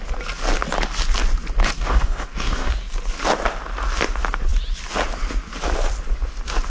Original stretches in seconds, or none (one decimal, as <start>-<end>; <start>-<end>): 0.0-1.6; 2.7-6.7